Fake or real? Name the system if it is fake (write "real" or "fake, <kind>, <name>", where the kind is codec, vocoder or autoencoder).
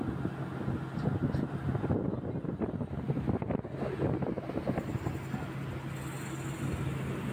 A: real